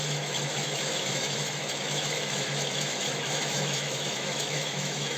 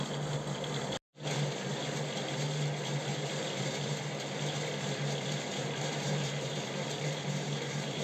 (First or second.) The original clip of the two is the second